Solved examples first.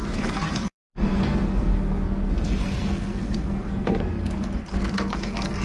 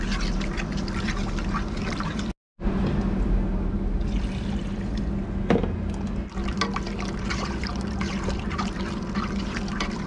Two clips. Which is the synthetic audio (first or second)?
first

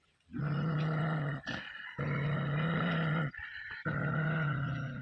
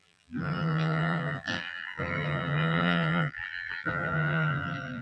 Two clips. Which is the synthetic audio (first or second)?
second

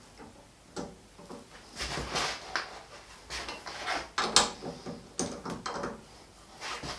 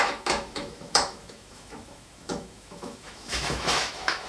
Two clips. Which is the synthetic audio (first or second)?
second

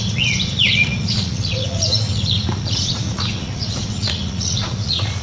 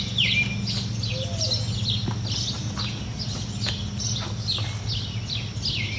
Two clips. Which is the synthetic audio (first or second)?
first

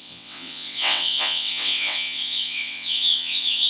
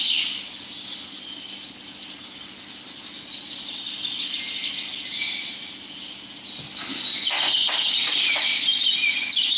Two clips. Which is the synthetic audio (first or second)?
first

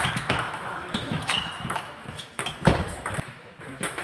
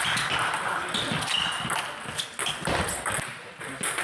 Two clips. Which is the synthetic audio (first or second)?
first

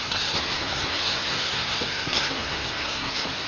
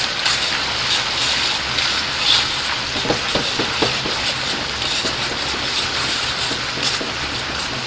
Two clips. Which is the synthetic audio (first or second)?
first